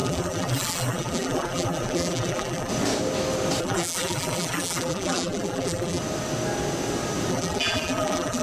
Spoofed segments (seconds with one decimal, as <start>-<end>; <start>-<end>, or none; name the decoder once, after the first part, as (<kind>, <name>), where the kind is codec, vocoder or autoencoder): 0.0-2.7 (vocoder, BigVGAN v2); 3.6-6.0; 7.3-8.4